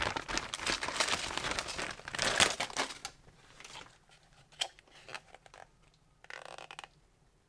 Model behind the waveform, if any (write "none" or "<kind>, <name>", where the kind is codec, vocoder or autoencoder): none